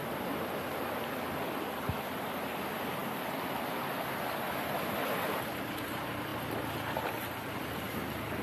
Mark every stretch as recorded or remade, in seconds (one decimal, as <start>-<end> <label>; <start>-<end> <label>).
0.0-8.4 recorded

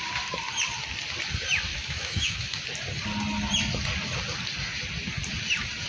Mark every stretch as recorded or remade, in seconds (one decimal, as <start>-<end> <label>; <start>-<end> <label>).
0.0-1.7 recorded; 1.7-2.6 remade; 2.6-5.9 recorded